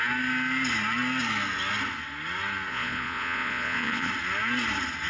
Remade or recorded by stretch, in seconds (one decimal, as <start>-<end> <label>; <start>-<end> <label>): 0.0-2.7 recorded; 2.7-4.1 remade; 4.1-5.1 recorded